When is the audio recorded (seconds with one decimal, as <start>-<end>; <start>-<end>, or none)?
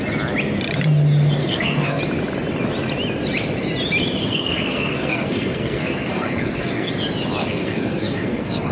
0.0-1.4; 2.0-4.2; 6.9-7.4